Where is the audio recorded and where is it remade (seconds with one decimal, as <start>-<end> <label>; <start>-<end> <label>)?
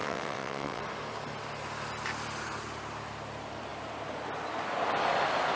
0.0-0.8 remade; 0.8-5.6 recorded